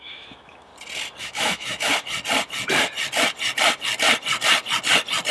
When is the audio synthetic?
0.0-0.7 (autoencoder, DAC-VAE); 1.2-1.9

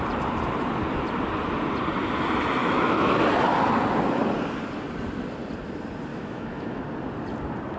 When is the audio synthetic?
2.6-3.1 (autoencoder, DAC-VAE); 6.1-6.8